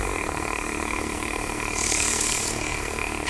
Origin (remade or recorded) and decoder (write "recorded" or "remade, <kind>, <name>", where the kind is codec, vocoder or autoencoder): remade, codec, SNAC